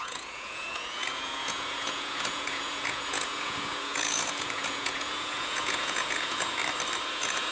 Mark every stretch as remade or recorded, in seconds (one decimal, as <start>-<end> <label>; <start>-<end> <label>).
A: 0.0-6.6 remade; 6.6-7.1 recorded; 7.1-7.5 remade